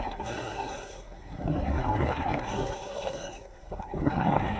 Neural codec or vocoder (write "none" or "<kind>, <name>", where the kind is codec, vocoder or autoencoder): codec, SNAC